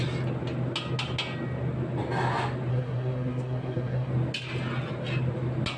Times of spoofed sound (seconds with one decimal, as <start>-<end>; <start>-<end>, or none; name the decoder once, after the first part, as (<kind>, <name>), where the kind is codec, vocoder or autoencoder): 2.7-4.1 (codec, SNAC)

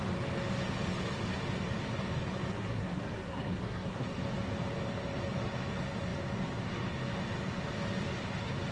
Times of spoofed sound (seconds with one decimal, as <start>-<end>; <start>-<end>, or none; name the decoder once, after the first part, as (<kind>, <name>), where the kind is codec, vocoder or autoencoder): 2.5-4.2 (codec, SNAC)

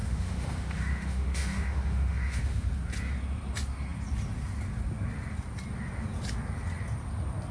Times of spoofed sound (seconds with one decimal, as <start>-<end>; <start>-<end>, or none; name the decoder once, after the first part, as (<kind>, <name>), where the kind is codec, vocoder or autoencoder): 0.0-2.7 (autoencoder, DAC-VAE)

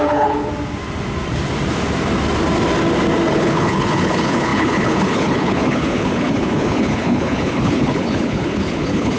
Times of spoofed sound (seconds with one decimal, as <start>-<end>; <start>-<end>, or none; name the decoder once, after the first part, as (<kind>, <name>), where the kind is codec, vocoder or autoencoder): 0.0-0.5 (codec, HILCodec); 3.3-9.2

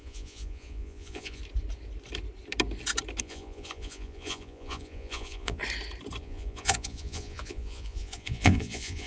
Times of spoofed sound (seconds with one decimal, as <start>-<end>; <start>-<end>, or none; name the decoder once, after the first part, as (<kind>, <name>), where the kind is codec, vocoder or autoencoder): 0.0-1.4 (vocoder, Vocos); 3.2-5.6; 6.2-9.1

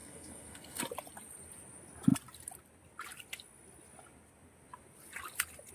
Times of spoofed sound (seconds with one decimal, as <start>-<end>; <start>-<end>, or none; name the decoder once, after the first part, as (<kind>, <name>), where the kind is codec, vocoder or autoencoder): 0.0-0.8 (codec, SNAC)

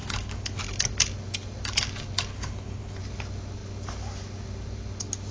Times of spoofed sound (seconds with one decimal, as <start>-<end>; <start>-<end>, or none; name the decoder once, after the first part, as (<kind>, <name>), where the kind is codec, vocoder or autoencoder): 0.0-0.6 (codec, HILCodec); 2.3-3.0

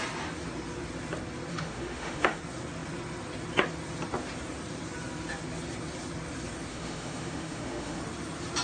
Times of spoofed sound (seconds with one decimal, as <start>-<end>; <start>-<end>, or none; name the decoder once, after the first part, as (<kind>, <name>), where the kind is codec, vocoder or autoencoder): 1.5-2.4 (autoencoder, DAC-VAE); 6.7-8.0